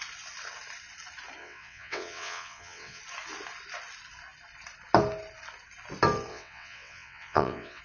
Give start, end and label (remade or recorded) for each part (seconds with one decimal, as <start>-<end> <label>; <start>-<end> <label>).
0.0-1.4 recorded; 1.4-3.0 remade; 3.0-6.3 recorded; 6.3-7.8 remade